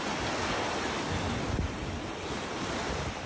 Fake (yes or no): no